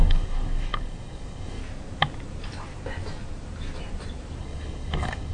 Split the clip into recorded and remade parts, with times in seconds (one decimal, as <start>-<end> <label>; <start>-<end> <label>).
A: 0.0-1.6 remade; 1.6-4.4 recorded; 4.4-5.3 remade